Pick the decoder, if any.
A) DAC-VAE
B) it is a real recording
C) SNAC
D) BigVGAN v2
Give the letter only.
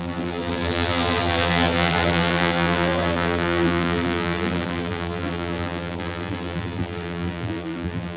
D